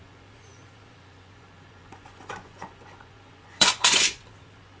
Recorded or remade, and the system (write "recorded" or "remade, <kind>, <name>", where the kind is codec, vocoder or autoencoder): remade, vocoder, Vocos